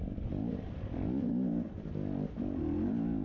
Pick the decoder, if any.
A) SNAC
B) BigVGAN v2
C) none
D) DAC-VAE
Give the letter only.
C